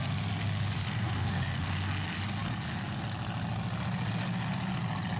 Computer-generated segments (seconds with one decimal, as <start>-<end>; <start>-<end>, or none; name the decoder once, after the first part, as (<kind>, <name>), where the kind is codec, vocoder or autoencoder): 0.8-1.7 (codec, SNAC)